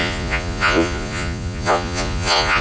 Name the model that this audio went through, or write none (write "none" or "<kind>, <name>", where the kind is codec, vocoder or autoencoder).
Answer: vocoder, Vocos